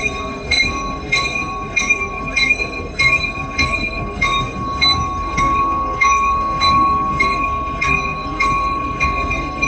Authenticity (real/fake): fake